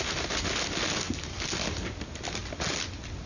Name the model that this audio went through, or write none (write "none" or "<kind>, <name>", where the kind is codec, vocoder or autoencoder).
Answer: none